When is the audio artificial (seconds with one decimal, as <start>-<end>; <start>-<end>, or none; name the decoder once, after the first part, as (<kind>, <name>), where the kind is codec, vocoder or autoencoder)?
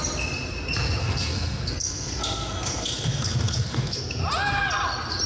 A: 1.0-4.2 (codec, SNAC)